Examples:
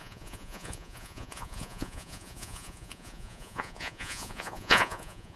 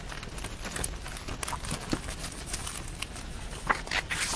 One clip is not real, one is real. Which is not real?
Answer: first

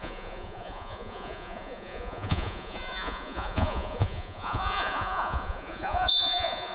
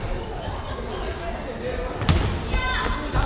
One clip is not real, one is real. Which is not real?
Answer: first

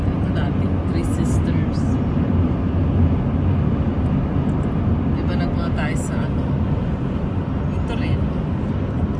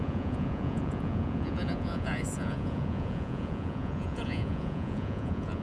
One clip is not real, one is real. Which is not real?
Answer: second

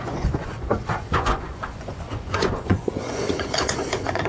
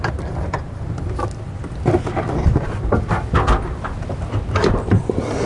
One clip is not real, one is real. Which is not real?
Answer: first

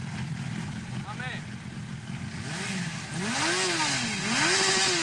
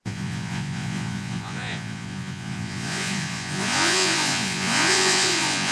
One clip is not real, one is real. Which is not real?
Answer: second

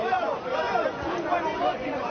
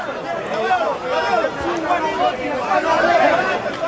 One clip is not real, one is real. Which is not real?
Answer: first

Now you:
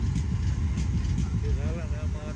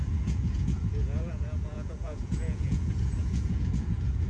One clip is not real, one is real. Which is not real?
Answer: second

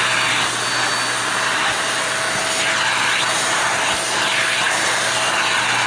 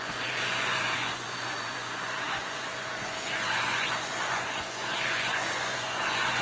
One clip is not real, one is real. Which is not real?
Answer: second